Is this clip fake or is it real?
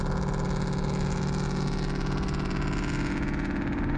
real